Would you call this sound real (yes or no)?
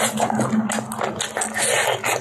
yes